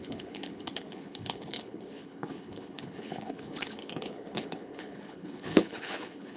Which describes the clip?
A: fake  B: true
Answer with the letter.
A